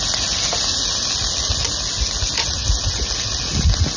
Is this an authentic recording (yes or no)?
yes